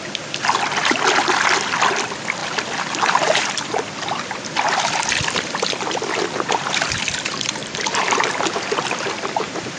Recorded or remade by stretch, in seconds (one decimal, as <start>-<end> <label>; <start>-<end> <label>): 0.0-7.6 recorded; 7.6-9.8 remade